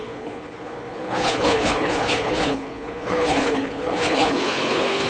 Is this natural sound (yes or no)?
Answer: no